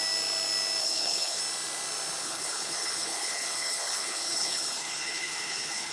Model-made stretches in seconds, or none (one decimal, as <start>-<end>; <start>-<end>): 0.8-1.4; 2.2-5.9

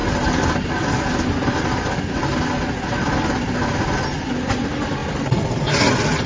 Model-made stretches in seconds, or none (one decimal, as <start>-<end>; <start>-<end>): none

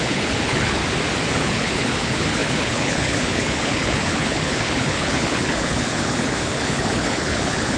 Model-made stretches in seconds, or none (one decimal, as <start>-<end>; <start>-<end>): 0.0-0.8; 1.3-7.8